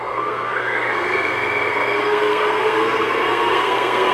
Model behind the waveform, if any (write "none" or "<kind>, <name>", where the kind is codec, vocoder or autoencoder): codec, SNAC